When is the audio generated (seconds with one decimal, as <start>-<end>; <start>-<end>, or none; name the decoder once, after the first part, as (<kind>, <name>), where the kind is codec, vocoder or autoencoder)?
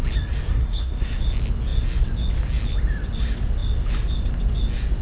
0.5-1.2 (codec, SNAC)